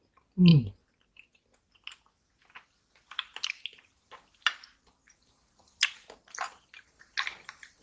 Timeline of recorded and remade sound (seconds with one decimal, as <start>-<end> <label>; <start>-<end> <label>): 0.0-7.8 recorded